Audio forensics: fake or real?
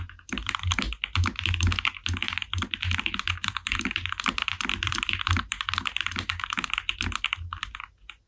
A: real